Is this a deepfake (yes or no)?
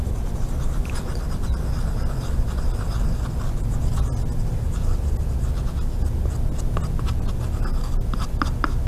no